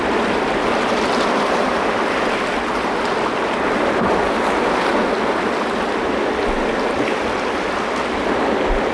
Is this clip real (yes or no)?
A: yes